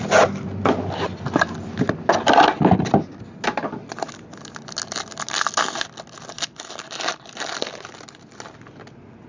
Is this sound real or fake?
real